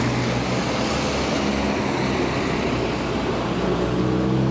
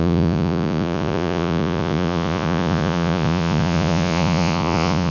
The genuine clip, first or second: first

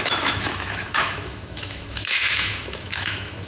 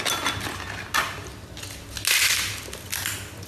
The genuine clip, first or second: second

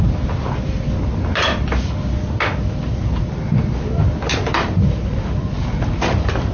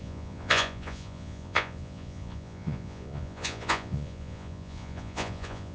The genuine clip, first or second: first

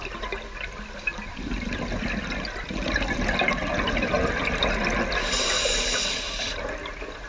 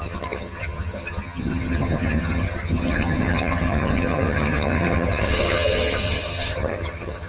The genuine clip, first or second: first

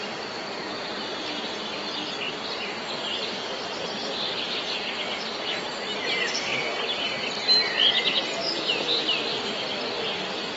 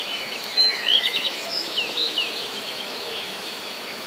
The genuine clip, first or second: first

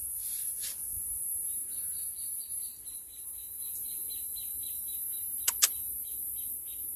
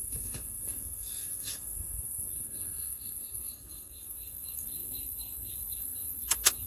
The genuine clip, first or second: first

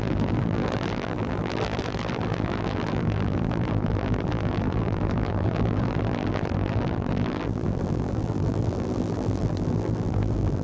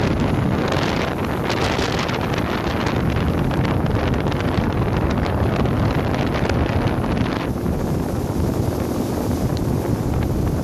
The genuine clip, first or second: second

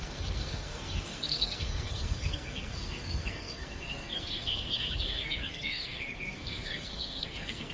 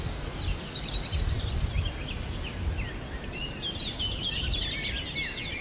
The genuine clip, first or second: second